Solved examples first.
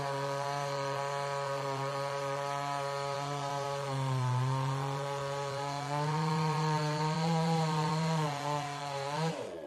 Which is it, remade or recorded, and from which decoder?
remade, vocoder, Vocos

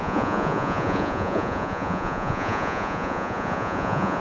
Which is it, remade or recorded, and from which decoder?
remade, vocoder, Vocos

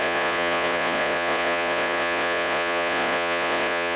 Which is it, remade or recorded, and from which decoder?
remade, vocoder, Vocos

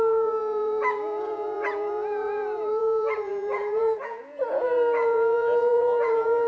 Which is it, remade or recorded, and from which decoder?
remade, vocoder, Vocos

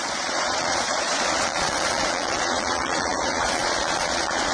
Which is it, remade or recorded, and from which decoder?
remade, vocoder, Vocos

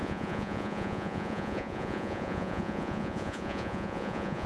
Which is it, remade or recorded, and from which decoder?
remade, vocoder, Vocos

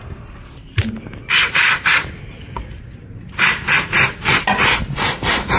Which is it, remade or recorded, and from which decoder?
recorded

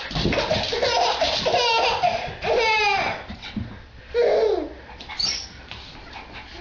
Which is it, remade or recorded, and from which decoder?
recorded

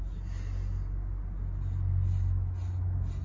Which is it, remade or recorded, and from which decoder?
recorded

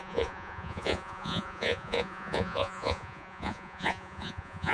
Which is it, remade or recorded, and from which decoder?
remade, vocoder, Vocos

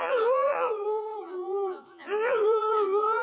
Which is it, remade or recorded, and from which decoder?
remade, vocoder, Vocos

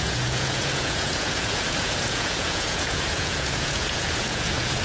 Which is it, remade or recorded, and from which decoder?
remade, vocoder, Vocos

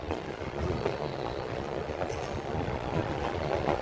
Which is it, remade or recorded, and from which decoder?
remade, vocoder, Vocos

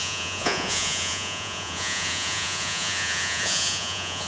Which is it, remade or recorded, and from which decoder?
remade, vocoder, Vocos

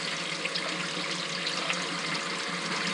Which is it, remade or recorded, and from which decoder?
recorded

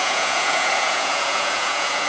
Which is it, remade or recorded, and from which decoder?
remade, vocoder, Vocos